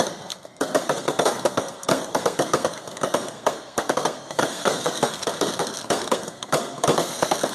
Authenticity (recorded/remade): remade